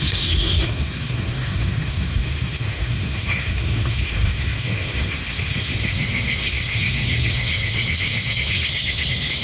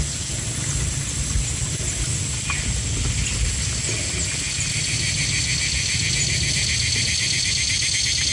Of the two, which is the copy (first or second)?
first